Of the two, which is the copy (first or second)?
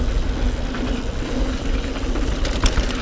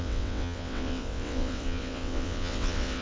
second